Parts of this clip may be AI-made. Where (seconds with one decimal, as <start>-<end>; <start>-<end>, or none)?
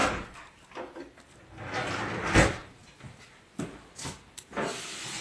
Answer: none